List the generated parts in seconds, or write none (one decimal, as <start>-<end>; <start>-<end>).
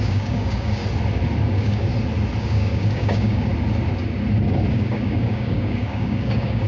0.0-0.8; 1.4-1.9; 2.4-3.5; 4.7-6.7